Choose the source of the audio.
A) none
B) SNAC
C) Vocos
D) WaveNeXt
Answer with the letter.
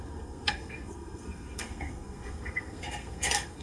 B